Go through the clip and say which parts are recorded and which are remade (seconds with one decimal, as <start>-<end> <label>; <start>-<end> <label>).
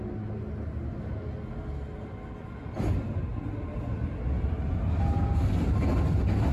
0.0-6.5 recorded